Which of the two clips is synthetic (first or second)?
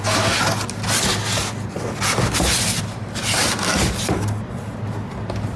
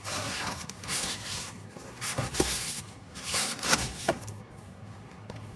second